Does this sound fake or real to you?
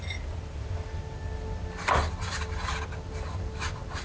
real